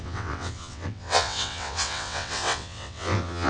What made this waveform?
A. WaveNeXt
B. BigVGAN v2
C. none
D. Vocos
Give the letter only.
A